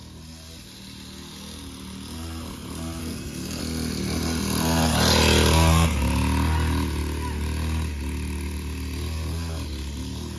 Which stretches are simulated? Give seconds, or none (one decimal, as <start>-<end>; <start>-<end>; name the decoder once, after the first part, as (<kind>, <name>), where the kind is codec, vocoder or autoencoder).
3.0-3.6 (codec, SNAC)